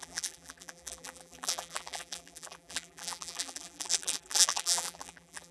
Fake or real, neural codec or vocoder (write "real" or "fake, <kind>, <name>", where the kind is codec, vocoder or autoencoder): fake, vocoder, BigVGAN v2